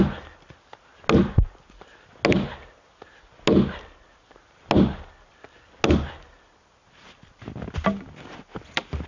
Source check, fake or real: real